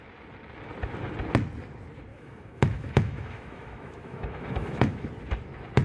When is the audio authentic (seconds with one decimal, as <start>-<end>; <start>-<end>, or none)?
0.0-2.1; 5.1-5.8